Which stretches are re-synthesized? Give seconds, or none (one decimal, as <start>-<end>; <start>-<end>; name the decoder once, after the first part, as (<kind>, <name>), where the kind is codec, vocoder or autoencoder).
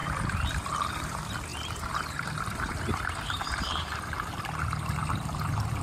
1.5-4.4 (vocoder, BigVGAN v2)